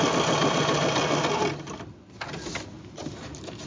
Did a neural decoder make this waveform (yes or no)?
no